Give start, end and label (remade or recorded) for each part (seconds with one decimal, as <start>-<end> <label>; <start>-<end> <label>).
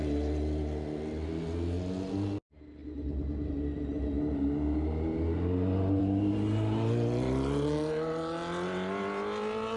0.0-9.8 recorded